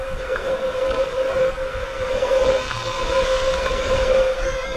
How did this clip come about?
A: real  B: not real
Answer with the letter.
B